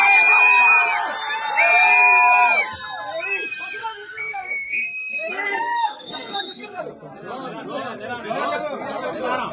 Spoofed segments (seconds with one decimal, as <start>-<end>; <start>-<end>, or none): 3.8-6.8